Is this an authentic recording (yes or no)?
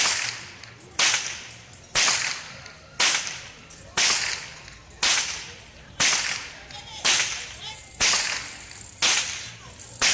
yes